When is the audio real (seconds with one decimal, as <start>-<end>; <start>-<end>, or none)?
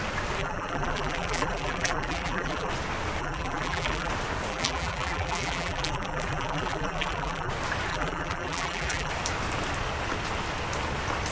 0.0-0.4; 2.7-3.2; 4.1-4.5; 7.5-7.9; 9.1-11.3